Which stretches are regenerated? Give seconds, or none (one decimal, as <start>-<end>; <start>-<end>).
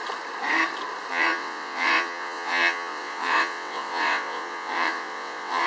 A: 1.1-5.7